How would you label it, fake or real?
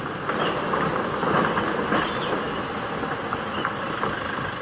real